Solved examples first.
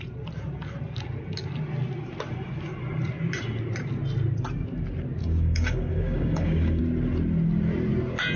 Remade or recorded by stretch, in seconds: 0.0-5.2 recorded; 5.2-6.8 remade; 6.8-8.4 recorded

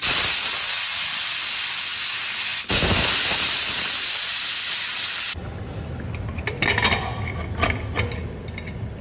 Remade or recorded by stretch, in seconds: 0.0-0.5 remade; 0.5-9.0 recorded

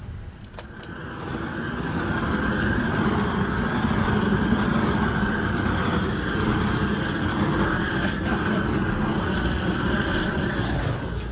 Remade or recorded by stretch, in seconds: 0.0-11.3 recorded

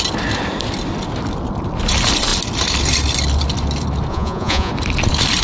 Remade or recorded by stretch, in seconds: 0.0-4.1 recorded; 4.1-4.7 remade; 4.7-5.4 recorded

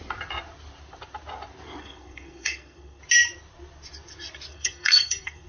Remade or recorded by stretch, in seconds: 0.0-1.8 recorded; 1.8-3.0 remade; 3.0-4.5 recorded; 4.5-5.5 remade